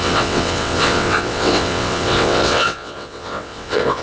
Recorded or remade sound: remade